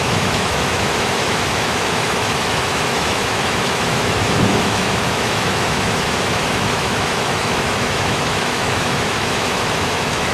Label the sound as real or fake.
fake